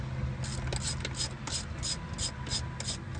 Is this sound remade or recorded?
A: recorded